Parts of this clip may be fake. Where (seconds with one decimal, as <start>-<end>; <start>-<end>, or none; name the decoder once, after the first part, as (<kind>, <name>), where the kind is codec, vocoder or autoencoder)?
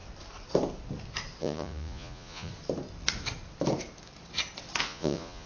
1.4-2.5 (vocoder, Vocos); 4.8-5.5